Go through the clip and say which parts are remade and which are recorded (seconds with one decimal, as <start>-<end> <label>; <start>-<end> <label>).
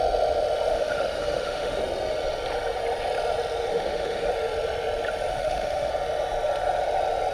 0.0-0.7 recorded; 0.7-1.8 remade; 1.8-3.7 recorded; 3.7-4.3 remade; 4.3-5.3 recorded; 5.3-5.9 remade; 5.9-7.3 recorded